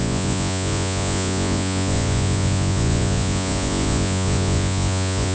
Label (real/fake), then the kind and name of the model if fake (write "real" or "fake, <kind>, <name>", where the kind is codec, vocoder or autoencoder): fake, vocoder, Vocos